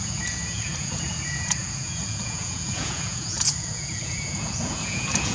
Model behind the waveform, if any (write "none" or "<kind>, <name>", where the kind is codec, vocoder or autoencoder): vocoder, Vocos